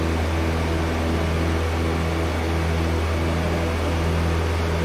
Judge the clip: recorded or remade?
recorded